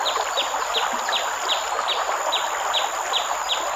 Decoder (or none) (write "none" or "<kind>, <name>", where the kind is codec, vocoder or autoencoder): none